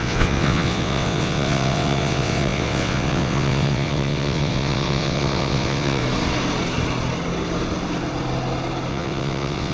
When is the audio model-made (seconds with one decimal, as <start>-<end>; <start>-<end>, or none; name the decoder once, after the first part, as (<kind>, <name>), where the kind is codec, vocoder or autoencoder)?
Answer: 0.0-6.0 (vocoder, WaveNeXt); 8.9-9.7